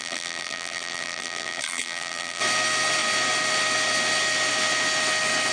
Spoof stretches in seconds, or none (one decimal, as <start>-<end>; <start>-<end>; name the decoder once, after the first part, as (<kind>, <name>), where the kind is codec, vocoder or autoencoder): 0.0-2.4 (vocoder, BigVGAN v2)